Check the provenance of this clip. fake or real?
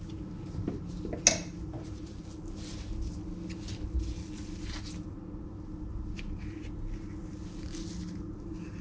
real